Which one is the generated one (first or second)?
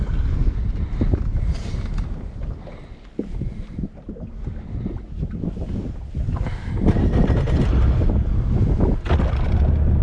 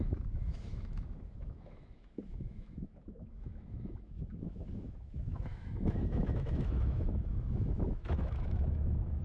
second